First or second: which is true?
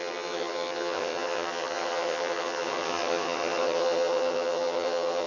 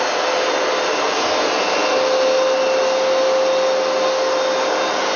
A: second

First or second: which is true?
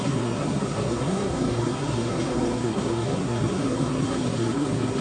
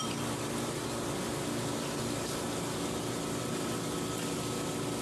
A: second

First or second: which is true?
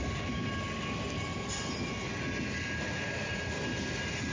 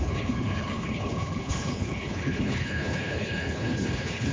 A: first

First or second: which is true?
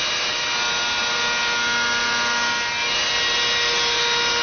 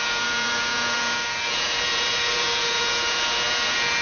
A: first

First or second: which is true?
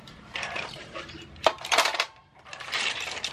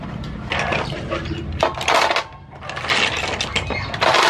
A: second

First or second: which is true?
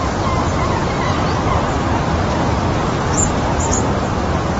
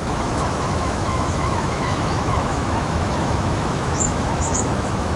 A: first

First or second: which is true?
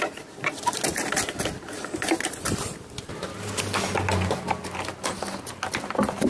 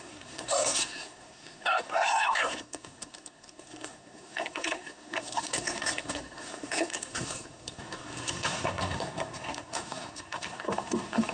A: first